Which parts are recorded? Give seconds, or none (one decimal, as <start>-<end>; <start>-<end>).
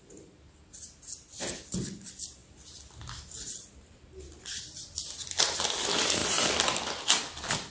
0.0-7.7